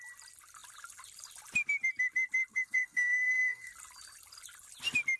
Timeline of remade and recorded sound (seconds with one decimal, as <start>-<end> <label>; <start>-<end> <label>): 0.0-2.5 recorded; 2.5-3.7 remade; 3.7-5.2 recorded